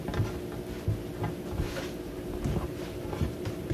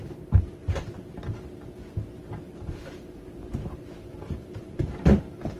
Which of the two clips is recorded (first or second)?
first